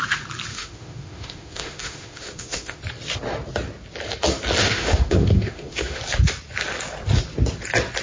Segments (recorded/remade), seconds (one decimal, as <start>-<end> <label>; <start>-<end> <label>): 0.0-0.5 recorded; 0.5-2.8 remade; 2.8-4.6 recorded; 4.6-6.0 remade; 6.0-8.0 recorded

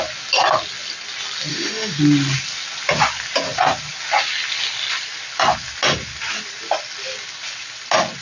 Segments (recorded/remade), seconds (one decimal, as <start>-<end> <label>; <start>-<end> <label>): 0.0-1.5 recorded; 1.5-2.0 remade; 2.0-8.2 recorded

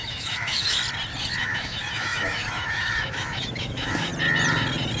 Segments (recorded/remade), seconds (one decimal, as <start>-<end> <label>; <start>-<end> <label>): 0.0-0.8 remade; 0.8-1.4 recorded; 1.4-4.1 remade; 4.1-5.0 recorded

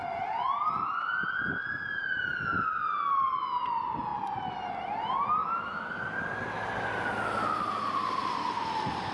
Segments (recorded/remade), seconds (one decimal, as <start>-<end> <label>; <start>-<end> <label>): 0.0-5.4 recorded; 5.4-6.0 remade; 6.0-9.1 recorded

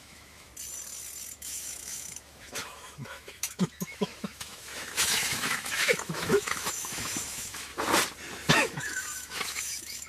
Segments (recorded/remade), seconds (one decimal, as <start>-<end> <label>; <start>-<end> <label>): 0.0-0.5 remade; 0.5-1.3 recorded; 1.3-7.7 remade; 7.7-8.5 recorded; 8.5-10.1 remade

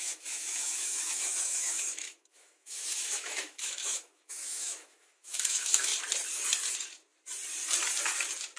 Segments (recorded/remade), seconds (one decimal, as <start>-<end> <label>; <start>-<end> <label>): 0.0-5.9 remade; 5.9-8.6 recorded

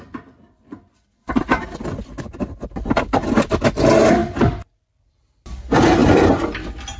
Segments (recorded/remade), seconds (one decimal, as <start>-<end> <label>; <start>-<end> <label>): 0.0-7.0 recorded

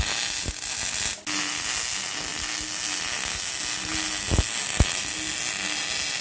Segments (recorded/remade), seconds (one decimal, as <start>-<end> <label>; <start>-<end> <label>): 0.0-6.2 recorded